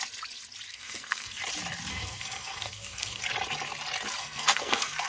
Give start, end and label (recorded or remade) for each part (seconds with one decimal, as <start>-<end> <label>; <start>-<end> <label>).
0.0-0.7 recorded; 0.7-1.4 remade; 1.4-1.9 recorded; 1.9-3.2 remade; 3.2-4.2 recorded; 4.2-5.1 remade